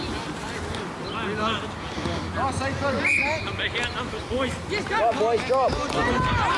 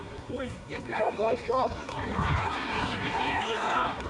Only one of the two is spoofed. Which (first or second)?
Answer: second